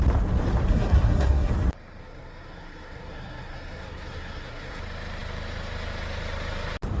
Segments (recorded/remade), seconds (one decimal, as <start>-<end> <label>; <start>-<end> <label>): 0.0-0.7 recorded; 0.7-1.5 remade; 1.5-2.0 recorded; 2.0-4.8 remade; 4.8-7.0 recorded